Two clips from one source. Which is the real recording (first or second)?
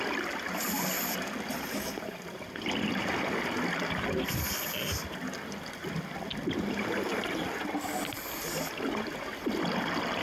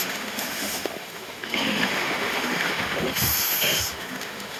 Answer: first